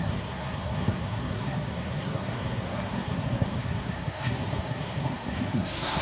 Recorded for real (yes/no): no